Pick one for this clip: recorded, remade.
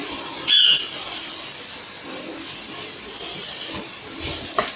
recorded